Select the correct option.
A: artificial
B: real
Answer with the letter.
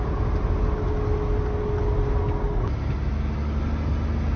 B